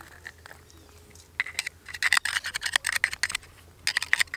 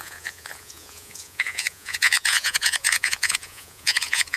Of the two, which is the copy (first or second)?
second